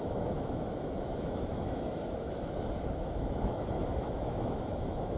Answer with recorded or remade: remade